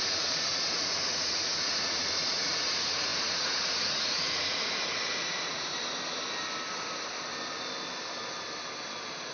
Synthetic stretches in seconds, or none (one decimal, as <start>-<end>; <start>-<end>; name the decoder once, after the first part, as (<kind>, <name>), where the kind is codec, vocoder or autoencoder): 0.0-5.7 (vocoder, Vocos)